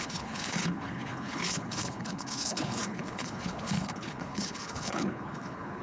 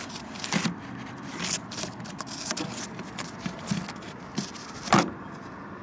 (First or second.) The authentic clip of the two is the second